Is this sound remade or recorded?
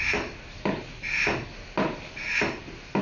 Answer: recorded